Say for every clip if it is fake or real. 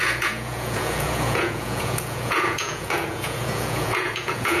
fake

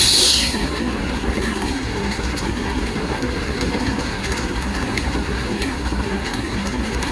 fake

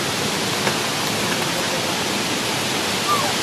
real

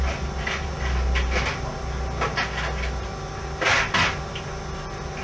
real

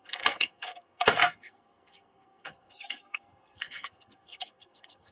fake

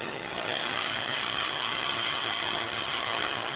fake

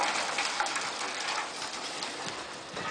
real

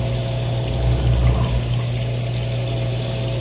real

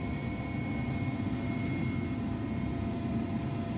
fake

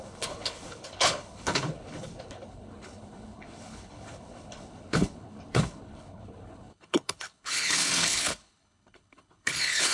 fake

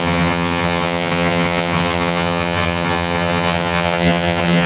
fake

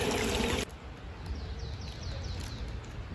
real